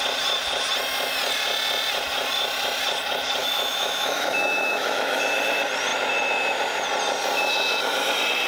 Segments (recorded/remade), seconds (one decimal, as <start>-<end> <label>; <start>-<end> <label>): 0.0-3.4 recorded; 3.4-5.2 remade; 5.2-8.5 recorded